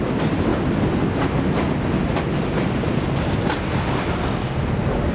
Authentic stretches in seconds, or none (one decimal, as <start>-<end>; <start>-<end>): 0.0-5.1